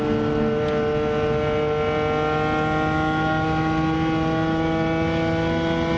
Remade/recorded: recorded